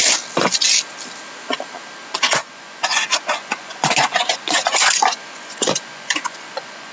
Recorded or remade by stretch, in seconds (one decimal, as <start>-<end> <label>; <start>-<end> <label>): 0.0-2.2 recorded; 2.2-6.9 remade

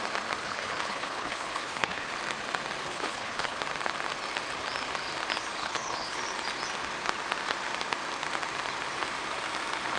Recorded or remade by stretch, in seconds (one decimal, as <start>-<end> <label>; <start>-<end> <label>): 0.0-0.4 recorded; 0.4-2.1 remade; 2.1-2.8 recorded; 2.8-3.6 remade; 3.6-5.6 recorded; 5.6-6.2 remade; 6.2-10.0 recorded

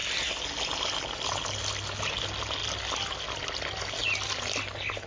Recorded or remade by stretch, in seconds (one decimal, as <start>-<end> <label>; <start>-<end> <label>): 0.0-5.1 recorded